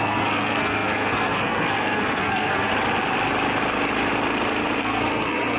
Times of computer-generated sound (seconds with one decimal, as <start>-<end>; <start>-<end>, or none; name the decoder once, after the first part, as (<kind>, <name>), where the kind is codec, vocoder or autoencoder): 0.0-2.7 (codec, SNAC); 4.8-5.6

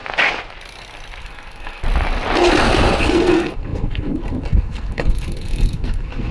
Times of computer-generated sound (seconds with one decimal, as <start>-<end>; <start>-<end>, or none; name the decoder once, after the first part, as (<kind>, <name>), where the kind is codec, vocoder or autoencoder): 1.2-1.8 (codec, SNAC); 3.0-6.3

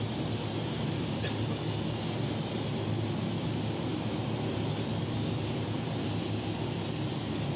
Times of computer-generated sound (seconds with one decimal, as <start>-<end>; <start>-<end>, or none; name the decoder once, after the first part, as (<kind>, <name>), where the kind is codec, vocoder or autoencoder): none

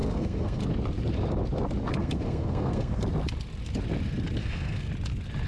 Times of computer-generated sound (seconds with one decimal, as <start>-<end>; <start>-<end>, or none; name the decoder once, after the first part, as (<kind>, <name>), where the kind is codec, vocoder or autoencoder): 0.0-0.6 (codec, SNAC); 2.0-3.0; 4.4-4.9

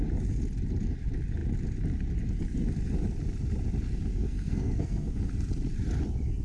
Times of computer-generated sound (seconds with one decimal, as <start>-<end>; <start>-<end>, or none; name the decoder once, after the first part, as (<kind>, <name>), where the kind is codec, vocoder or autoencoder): 4.1-5.2 (codec, SNAC)

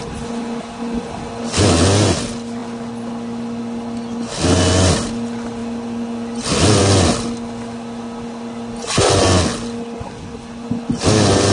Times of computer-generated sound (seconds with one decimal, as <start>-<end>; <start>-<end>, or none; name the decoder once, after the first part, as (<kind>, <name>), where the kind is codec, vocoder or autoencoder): none

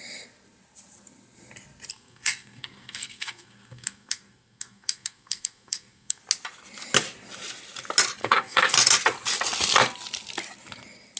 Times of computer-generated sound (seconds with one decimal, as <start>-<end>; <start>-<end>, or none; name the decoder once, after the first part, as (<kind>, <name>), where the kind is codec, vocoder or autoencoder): 1.9-6.2 (codec, SNAC); 8.2-8.7